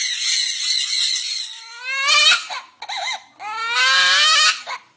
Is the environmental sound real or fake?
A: real